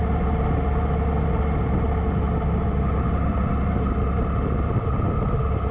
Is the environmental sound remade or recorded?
recorded